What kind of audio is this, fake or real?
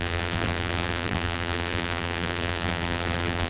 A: fake